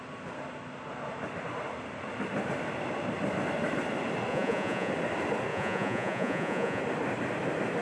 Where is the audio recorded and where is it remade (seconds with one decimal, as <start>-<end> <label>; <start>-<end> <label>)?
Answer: 0.0-4.3 recorded; 4.3-4.9 remade; 4.9-5.5 recorded; 5.5-6.8 remade; 6.8-7.8 recorded